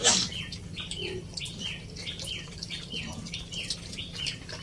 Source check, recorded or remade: recorded